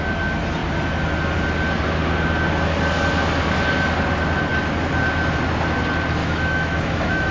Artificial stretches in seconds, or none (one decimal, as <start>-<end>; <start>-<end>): 6.2-7.3